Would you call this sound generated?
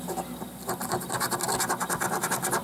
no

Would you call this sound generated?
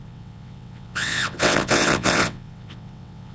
yes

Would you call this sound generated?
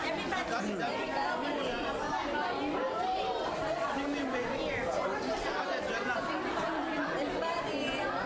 no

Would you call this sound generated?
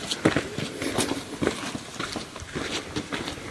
no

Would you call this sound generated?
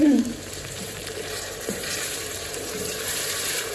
yes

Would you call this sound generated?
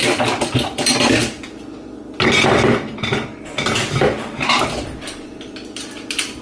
no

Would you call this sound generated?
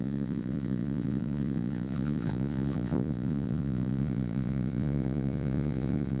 yes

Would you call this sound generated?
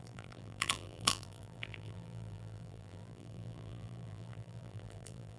yes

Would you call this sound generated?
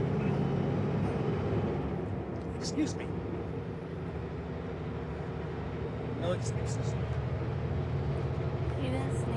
no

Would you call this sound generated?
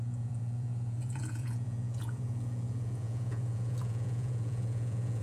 yes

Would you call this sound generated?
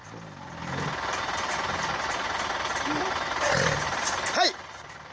no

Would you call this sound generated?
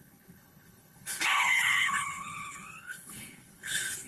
yes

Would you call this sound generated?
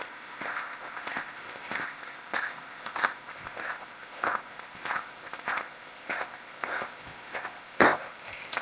yes